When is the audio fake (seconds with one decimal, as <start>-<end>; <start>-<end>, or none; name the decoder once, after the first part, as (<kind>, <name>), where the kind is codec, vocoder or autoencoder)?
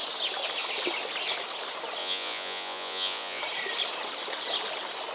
2.0-3.4 (vocoder, Vocos)